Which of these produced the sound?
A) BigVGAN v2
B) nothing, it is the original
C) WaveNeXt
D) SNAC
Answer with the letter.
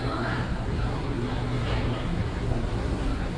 D